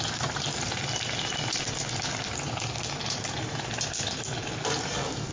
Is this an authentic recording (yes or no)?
yes